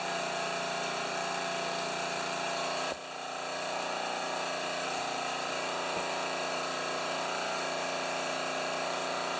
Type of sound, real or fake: real